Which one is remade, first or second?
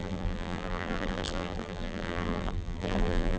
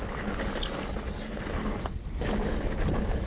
first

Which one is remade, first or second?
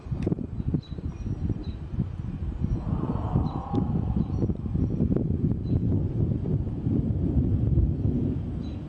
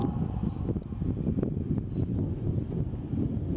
first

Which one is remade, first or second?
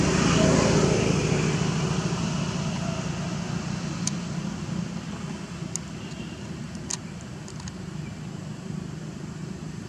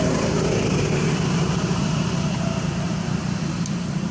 second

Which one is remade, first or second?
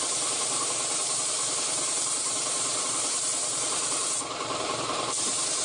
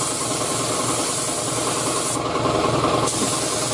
first